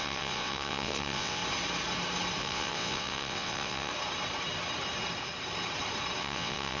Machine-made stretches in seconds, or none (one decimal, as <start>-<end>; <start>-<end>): 0.0-1.4; 2.4-3.9; 6.2-6.8